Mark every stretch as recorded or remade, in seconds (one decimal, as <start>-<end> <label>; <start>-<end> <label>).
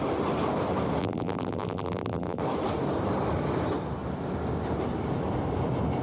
0.0-1.0 recorded; 1.0-2.4 remade; 2.4-6.0 recorded